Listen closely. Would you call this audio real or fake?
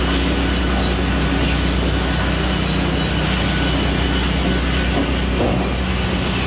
real